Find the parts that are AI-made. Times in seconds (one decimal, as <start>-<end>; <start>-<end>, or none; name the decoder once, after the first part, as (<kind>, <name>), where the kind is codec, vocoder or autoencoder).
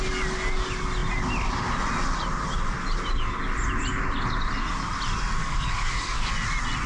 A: 5.4-6.3 (codec, DAC)